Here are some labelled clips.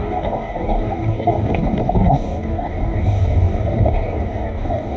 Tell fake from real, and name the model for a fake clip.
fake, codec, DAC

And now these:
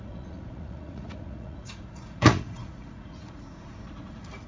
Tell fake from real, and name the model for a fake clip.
fake, vocoder, Vocos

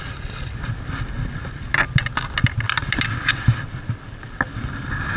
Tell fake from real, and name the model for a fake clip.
real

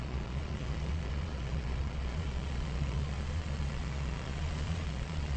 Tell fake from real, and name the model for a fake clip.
fake, vocoder, Vocos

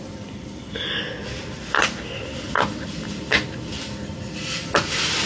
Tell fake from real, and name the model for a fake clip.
real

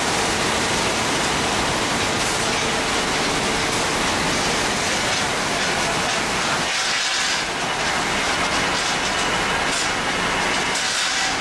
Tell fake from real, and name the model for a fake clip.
real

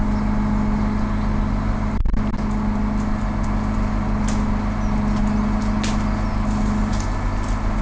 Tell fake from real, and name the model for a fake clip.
real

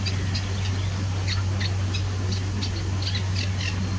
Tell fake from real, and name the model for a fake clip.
real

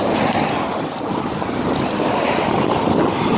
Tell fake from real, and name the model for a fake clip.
real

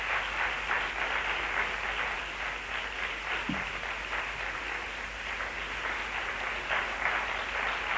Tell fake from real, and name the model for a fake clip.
real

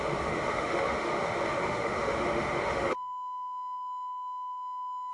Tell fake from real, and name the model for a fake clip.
fake, autoencoder, DAC-VAE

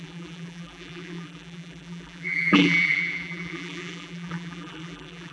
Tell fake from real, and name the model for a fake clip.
fake, vocoder, BigVGAN v2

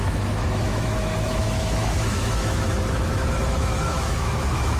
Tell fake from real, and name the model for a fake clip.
fake, autoencoder, DAC-VAE